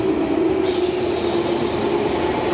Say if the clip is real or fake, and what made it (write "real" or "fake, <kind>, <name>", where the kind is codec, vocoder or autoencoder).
real